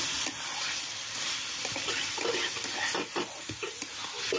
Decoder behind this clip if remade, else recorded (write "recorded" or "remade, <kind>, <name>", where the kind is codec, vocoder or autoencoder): recorded